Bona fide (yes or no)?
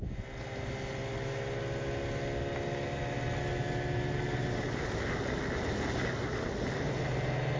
yes